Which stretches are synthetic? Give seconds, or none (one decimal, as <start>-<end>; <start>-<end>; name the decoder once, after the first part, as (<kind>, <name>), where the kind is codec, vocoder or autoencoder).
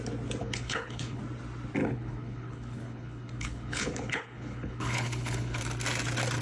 0.4-1.2 (codec, HILCodec); 1.8-5.6